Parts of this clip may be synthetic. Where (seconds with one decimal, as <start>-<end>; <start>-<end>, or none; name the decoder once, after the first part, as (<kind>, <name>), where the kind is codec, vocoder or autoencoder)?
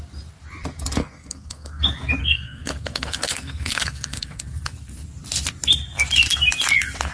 1.0-1.8 (codec, SNAC); 2.2-4.4